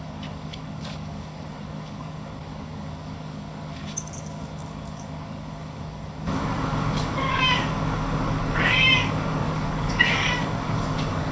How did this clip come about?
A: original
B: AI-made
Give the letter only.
B